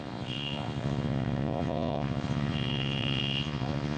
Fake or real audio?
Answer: fake